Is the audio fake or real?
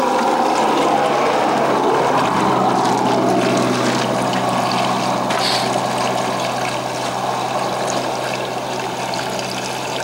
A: real